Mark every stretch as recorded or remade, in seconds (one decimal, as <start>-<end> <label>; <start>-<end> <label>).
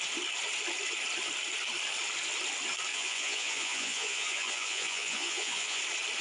0.0-2.9 recorded; 2.9-5.8 remade; 5.8-6.2 recorded